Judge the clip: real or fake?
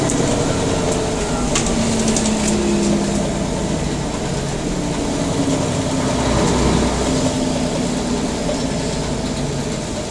real